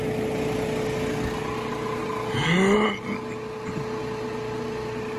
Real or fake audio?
real